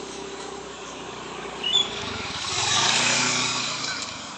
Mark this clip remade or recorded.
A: remade